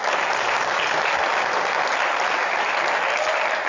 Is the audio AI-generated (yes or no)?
no